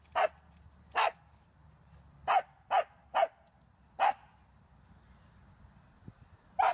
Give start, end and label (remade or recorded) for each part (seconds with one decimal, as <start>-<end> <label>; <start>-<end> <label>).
0.0-6.7 recorded